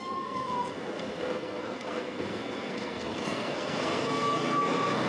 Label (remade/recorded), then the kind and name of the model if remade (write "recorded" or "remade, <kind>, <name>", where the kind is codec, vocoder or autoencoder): remade, codec, SNAC